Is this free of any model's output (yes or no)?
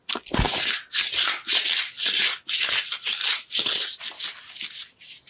yes